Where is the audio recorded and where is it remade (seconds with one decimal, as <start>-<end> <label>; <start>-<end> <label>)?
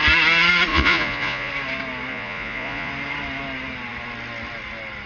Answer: 0.0-0.7 recorded; 0.7-1.5 remade; 1.5-2.1 recorded; 2.1-2.9 remade; 2.9-5.1 recorded